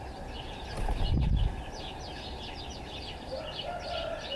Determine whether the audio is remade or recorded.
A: recorded